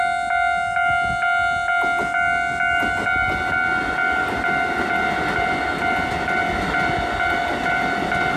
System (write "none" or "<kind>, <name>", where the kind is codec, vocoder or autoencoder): none